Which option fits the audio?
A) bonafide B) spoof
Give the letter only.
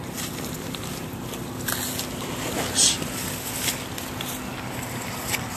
A